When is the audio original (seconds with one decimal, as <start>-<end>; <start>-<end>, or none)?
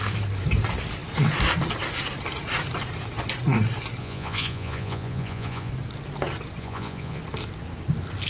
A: 0.0-4.0; 5.7-6.6; 7.2-8.3